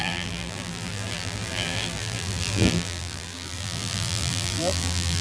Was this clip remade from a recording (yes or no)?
yes